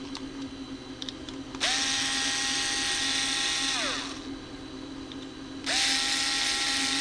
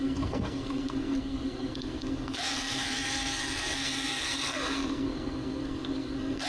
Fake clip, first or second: second